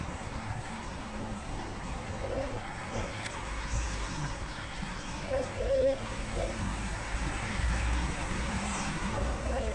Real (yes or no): no